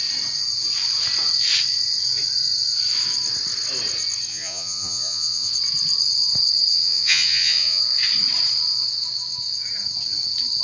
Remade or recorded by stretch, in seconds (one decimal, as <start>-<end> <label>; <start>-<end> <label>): 0.0-4.3 recorded; 4.3-5.5 remade; 5.5-6.7 recorded; 6.7-7.8 remade; 7.8-10.6 recorded